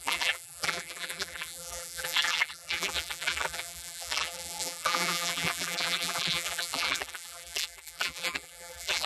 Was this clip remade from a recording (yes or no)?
yes